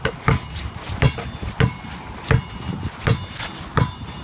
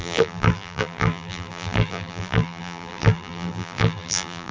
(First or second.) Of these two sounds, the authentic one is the first